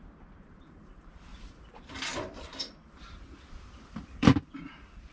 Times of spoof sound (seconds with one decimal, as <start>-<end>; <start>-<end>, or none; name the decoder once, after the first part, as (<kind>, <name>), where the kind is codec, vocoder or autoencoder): 0.0-5.1 (vocoder, BigVGAN v2)